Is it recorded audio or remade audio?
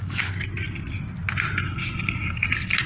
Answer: recorded